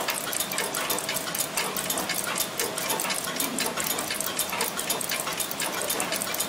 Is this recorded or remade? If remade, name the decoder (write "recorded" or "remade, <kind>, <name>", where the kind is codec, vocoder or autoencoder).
recorded